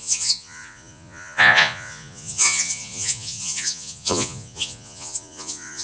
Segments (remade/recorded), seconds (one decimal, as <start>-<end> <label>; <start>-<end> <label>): 0.0-5.8 remade